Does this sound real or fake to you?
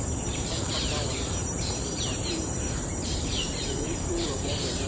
fake